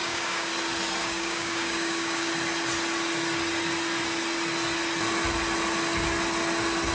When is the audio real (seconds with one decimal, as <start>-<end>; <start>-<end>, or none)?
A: 0.5-1.0; 2.3-6.9